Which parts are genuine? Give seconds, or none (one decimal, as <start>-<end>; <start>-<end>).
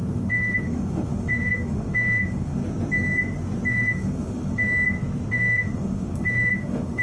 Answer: 2.6-3.7; 4.7-5.3